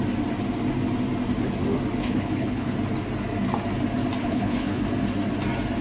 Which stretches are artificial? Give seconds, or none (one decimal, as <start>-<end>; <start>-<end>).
2.0-2.7; 4.2-4.8